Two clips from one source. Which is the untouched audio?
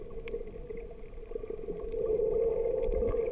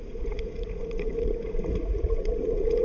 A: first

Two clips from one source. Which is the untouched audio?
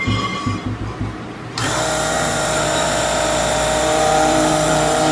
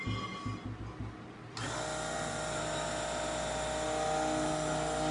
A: second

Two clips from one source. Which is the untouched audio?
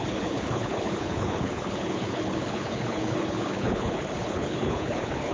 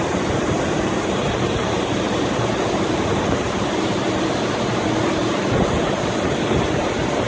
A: second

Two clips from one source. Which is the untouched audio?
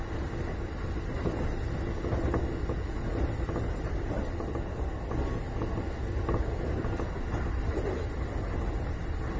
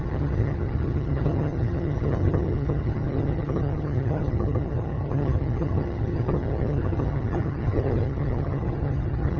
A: first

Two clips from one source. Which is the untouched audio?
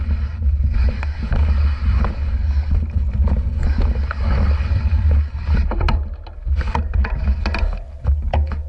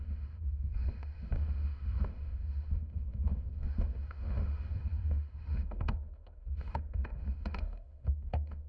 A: first